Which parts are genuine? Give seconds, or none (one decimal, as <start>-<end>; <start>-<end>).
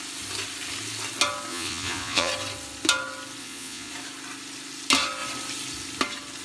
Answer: 0.0-1.5; 2.3-3.4; 3.9-6.4